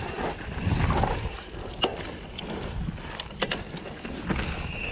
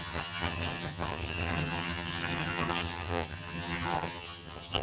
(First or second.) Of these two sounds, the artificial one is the second